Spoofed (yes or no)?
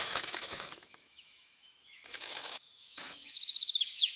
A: yes